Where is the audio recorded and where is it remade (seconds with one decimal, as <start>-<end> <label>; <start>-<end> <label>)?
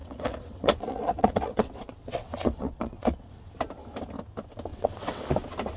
0.0-3.5 remade; 3.5-4.7 recorded; 4.7-5.2 remade; 5.2-5.8 recorded